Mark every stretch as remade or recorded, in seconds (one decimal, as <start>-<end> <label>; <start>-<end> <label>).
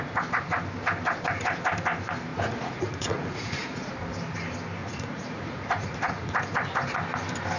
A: 0.0-2.3 recorded; 2.3-3.9 remade; 3.9-4.8 recorded; 4.8-6.4 remade; 6.4-7.6 recorded